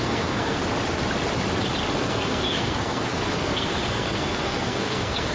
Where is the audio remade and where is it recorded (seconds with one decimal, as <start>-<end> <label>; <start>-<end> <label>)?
0.0-0.6 remade; 0.6-1.9 recorded; 1.9-5.3 remade